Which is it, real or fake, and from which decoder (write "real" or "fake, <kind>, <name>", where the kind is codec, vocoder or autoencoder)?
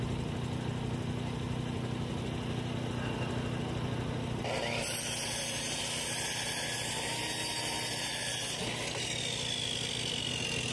real